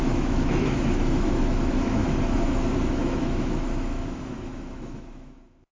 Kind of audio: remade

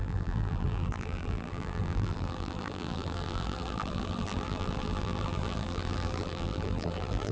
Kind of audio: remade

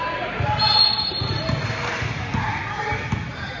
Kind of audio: recorded